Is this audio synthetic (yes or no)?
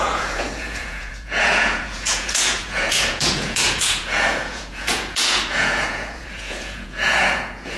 yes